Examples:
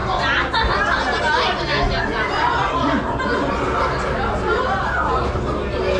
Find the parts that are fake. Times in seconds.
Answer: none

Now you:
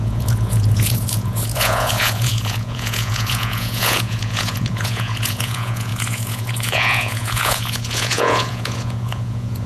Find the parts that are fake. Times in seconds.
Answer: 0.0-9.7 (vocoder, Vocos)

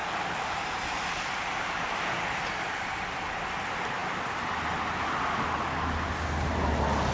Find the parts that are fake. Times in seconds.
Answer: 0.0-2.0 (vocoder, BigVGAN v2)